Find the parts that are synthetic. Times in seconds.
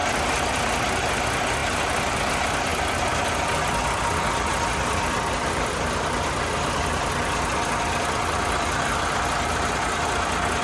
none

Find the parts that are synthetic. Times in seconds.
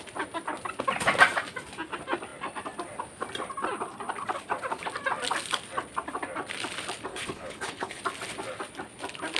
7.1-8.0 (codec, HILCodec)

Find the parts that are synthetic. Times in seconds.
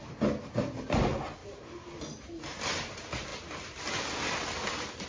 none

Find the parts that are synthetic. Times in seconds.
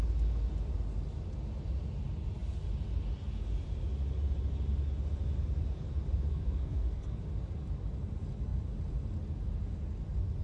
6.3-7.2 (codec, SNAC)